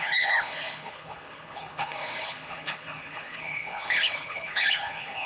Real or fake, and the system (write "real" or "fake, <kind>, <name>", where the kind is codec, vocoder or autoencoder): fake, codec, HILCodec